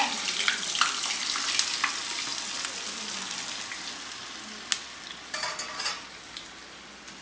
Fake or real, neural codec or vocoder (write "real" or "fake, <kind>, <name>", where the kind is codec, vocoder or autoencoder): real